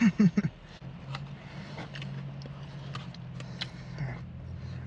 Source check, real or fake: real